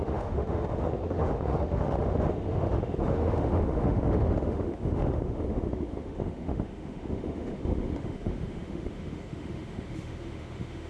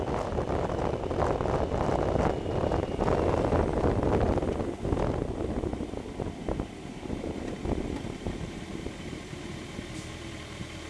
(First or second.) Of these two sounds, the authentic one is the second